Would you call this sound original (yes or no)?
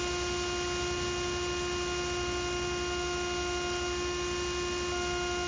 yes